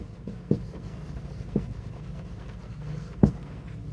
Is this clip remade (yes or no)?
yes